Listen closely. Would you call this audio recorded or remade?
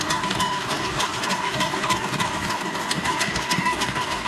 remade